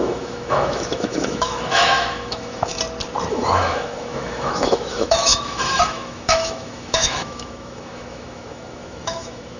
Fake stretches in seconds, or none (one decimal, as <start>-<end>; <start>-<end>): 0.0-2.7; 3.3-9.6